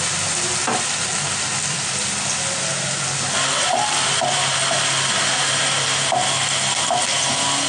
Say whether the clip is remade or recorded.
recorded